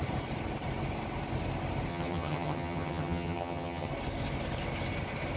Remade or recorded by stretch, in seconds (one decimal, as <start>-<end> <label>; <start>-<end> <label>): 0.0-1.9 recorded; 1.9-3.9 remade; 3.9-5.4 recorded